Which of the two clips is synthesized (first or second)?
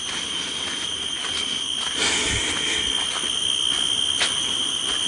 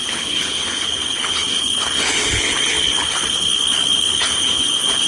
second